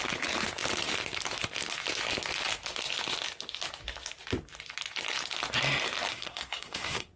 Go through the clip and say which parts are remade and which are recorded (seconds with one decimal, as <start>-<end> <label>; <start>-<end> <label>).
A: 0.0-6.1 recorded; 6.1-7.2 remade